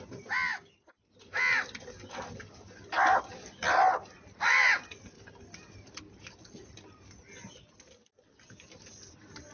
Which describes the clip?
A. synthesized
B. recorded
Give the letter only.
B